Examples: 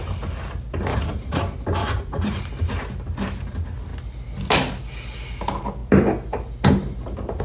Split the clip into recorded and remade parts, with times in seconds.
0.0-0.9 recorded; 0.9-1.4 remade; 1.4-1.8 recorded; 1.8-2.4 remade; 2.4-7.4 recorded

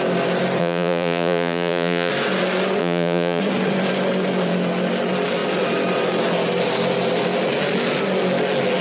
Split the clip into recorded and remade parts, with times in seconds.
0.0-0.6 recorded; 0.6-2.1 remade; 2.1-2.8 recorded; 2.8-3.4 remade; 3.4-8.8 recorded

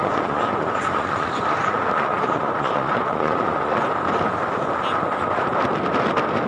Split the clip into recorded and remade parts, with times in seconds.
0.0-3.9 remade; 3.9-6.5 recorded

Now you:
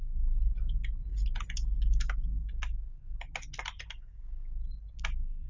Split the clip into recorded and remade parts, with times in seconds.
0.0-5.5 recorded

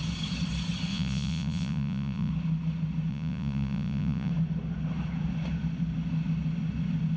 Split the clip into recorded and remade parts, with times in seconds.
0.0-0.9 recorded; 0.9-2.3 remade; 2.3-3.1 recorded; 3.1-4.3 remade; 4.3-7.2 recorded

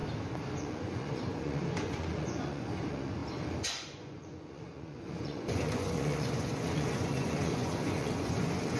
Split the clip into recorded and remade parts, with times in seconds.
0.0-0.6 recorded; 0.6-8.8 remade

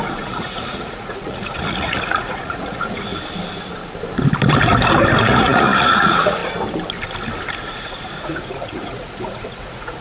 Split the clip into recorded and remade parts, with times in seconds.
0.0-3.1 remade; 3.1-5.2 recorded; 5.2-6.4 remade; 6.4-7.5 recorded; 7.5-10.0 remade